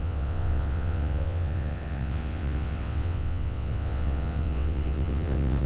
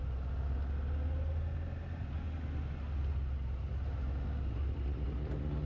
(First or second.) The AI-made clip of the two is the first